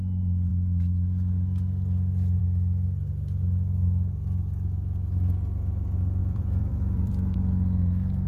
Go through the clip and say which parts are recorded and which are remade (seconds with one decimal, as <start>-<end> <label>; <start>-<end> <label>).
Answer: 0.0-6.2 recorded; 6.2-7.1 remade; 7.1-8.3 recorded